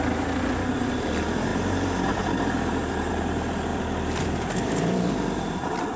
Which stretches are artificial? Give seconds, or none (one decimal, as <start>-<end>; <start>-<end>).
1.5-3.1; 3.7-5.1